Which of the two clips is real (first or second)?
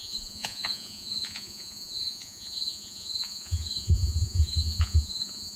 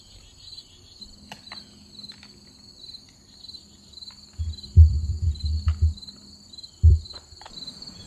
second